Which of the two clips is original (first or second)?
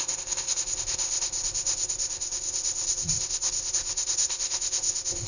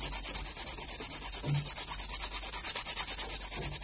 second